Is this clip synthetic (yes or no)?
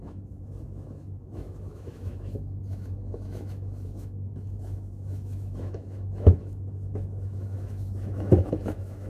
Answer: yes